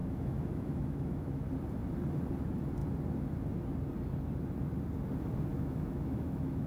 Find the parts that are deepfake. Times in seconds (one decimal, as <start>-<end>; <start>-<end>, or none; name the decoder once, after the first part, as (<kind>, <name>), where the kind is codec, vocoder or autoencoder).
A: 0.0-1.5 (autoencoder, DAC-VAE); 5.5-6.7